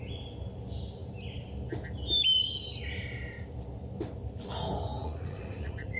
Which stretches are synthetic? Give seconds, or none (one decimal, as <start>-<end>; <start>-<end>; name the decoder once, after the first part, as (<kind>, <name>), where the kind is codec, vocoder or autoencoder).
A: 5.0-6.0 (vocoder, Vocos)